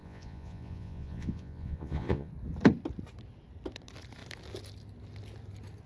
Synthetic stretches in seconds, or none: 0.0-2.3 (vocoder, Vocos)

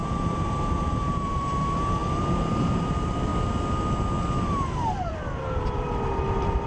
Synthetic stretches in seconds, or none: 0.0-3.3 (vocoder, BigVGAN v2); 4.4-6.7